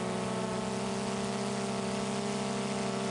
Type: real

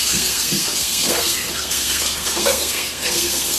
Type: fake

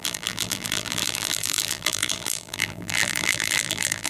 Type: fake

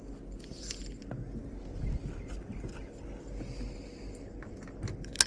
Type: real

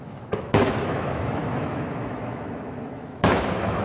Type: fake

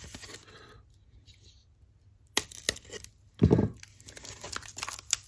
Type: real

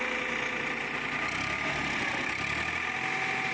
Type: real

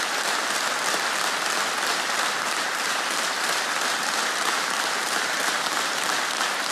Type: fake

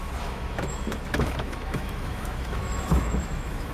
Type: fake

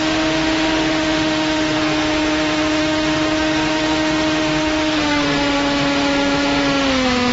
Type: fake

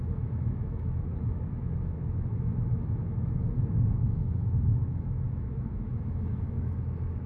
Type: fake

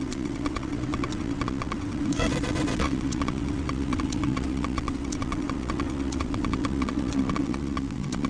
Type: fake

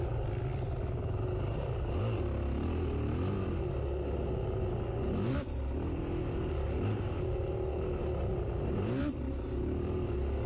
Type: real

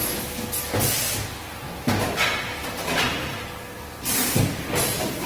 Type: real